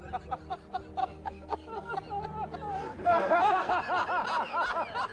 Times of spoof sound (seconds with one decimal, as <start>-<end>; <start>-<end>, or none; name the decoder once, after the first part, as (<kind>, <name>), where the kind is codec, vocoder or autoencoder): 1.0-1.9 (codec, SNAC); 2.7-3.7